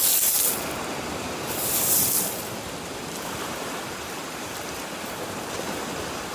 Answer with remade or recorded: recorded